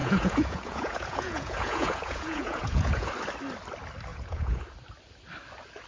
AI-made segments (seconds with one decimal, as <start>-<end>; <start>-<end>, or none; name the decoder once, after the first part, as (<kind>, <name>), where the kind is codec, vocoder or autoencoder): 0.0-3.1 (vocoder, Vocos); 4.1-4.6